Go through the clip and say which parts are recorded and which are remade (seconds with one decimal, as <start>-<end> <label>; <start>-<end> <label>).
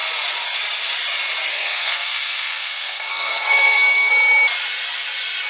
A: 0.0-1.5 recorded; 1.5-4.1 remade; 4.1-5.5 recorded